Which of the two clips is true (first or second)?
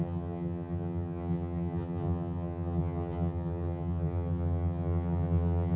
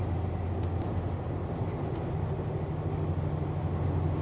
second